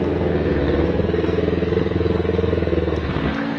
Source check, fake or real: fake